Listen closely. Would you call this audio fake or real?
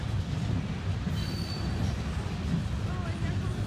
real